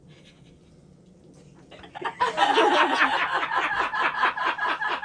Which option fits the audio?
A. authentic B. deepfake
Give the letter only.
A